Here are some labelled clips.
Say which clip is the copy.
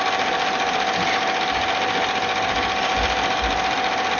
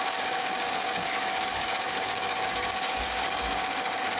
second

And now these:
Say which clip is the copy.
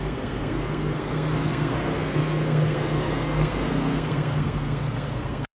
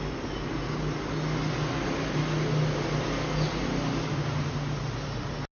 first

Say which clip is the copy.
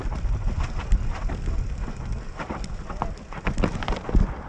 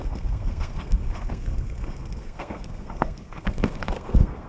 second